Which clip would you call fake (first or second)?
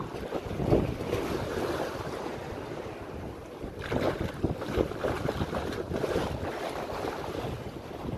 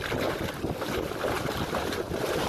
first